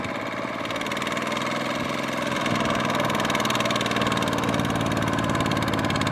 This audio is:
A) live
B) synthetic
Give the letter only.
A